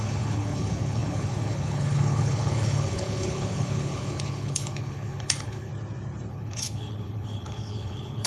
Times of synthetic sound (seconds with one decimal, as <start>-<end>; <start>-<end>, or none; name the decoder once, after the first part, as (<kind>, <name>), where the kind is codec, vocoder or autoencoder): 0.0-5.7 (codec, HILCodec); 6.3-8.3